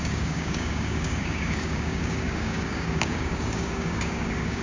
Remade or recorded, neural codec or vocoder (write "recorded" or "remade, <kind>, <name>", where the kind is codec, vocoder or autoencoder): remade, codec, DAC